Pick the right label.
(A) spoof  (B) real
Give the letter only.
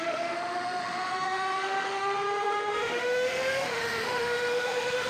A